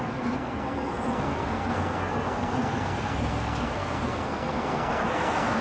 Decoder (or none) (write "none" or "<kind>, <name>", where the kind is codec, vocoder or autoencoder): codec, SNAC